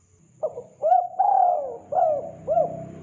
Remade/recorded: recorded